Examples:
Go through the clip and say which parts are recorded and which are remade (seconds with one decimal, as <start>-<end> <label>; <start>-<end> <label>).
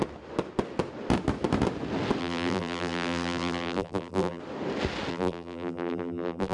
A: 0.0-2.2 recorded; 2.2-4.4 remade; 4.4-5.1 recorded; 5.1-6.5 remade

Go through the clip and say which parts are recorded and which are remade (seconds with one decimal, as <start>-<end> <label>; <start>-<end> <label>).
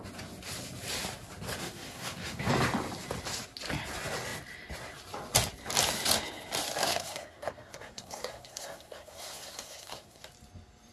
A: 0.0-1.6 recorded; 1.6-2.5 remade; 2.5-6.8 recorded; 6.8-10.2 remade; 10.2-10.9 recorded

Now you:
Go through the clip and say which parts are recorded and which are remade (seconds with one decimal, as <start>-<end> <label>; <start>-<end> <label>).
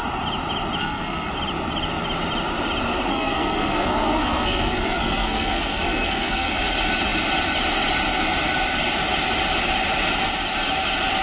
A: 0.0-0.8 recorded; 0.8-1.3 remade; 1.3-3.1 recorded; 3.1-6.5 remade; 6.5-11.2 recorded